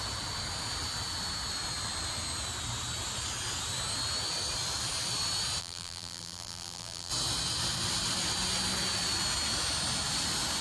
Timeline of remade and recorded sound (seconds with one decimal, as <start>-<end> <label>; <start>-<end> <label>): 0.0-5.6 recorded; 5.6-7.1 remade; 7.1-10.6 recorded